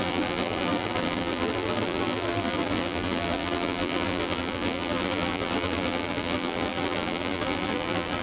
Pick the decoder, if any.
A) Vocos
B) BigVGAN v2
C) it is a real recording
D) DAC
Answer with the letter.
B